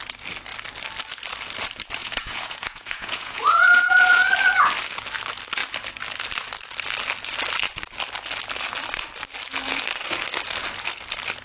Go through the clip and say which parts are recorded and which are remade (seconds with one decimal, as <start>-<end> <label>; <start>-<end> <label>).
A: 0.0-2.0 recorded; 2.0-4.3 remade; 4.3-11.4 recorded